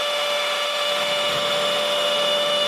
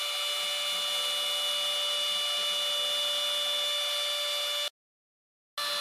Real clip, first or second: second